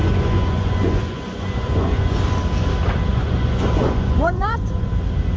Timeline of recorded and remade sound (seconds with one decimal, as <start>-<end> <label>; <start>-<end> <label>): 0.0-2.2 remade; 2.2-3.1 recorded; 3.1-4.9 remade; 4.9-5.4 recorded